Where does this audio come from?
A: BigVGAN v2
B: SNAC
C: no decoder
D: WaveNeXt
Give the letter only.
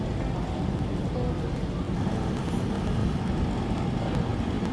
C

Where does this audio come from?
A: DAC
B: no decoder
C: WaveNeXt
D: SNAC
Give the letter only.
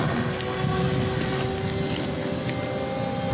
B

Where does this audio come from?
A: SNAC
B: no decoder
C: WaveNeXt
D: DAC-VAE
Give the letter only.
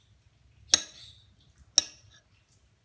B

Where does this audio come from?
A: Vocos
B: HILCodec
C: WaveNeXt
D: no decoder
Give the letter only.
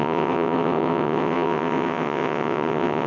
C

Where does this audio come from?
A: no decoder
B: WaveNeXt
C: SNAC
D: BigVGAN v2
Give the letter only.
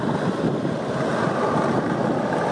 A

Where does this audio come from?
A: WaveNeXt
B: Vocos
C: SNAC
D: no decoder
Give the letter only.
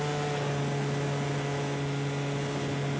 D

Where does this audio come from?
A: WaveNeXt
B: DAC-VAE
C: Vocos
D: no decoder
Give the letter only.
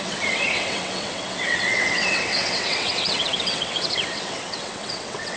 A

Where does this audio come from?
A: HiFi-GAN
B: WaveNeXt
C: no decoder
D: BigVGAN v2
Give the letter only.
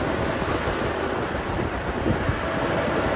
C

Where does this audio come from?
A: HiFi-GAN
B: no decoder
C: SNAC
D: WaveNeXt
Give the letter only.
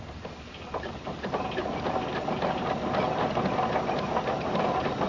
B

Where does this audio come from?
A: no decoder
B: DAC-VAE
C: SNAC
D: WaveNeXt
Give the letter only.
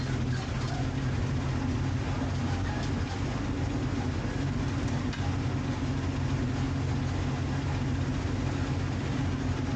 A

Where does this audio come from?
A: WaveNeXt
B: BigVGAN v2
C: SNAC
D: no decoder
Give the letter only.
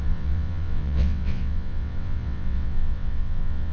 A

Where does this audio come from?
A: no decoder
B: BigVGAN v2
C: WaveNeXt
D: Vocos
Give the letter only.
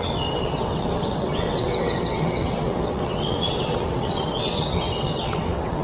C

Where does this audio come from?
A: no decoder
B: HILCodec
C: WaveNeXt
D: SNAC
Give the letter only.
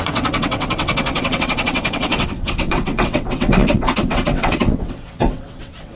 C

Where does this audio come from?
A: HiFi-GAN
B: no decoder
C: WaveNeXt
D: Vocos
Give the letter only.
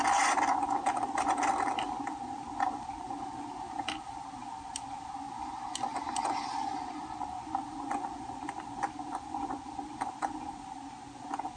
B